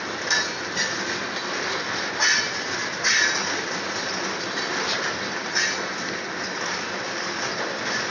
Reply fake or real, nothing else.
real